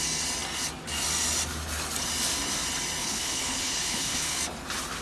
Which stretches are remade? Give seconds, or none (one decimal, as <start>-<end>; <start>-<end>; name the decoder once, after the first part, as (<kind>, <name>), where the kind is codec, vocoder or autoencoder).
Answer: 3.0-4.4 (codec, HILCodec)